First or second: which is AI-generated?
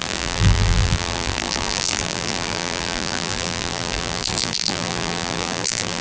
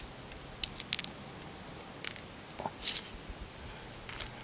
first